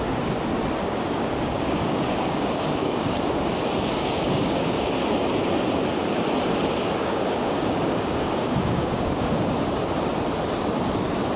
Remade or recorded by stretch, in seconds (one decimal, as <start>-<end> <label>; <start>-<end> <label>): 0.0-0.8 recorded; 0.8-4.9 remade; 4.9-7.0 recorded; 7.0-9.5 remade; 9.5-11.4 recorded